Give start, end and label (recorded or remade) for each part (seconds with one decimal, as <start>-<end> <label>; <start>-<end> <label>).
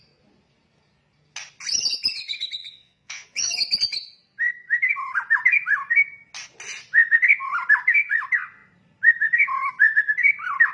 0.0-2.6 recorded; 2.6-3.5 remade; 3.5-10.7 recorded